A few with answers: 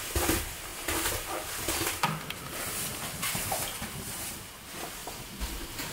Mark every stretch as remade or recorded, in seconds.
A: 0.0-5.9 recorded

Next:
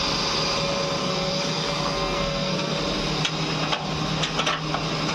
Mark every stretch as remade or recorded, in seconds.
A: 0.0-1.0 recorded; 1.0-2.8 remade; 2.8-5.1 recorded

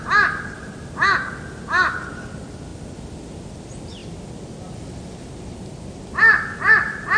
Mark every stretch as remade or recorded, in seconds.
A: 0.0-7.2 recorded

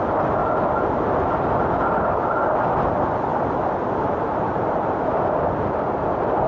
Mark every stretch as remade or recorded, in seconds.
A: 0.0-6.5 recorded

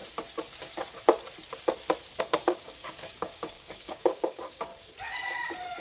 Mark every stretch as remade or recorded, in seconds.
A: 0.0-2.2 recorded; 2.2-4.7 remade; 4.7-5.8 recorded

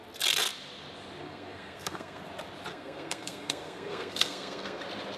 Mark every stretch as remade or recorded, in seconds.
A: 0.0-1.2 recorded; 1.2-2.3 remade; 2.3-2.7 recorded; 2.7-4.8 remade; 4.8-5.2 recorded

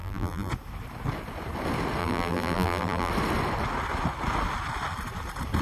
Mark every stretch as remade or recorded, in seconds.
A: 0.0-0.5 remade; 0.5-2.0 recorded; 2.0-3.1 remade; 3.1-5.6 recorded

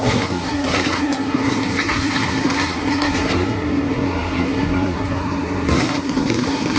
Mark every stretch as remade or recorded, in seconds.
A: 0.0-6.8 remade